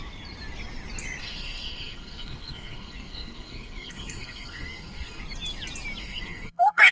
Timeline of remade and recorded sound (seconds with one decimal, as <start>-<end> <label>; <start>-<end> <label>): 0.0-1.2 recorded; 1.2-5.2 remade; 5.2-6.0 recorded; 6.0-6.9 remade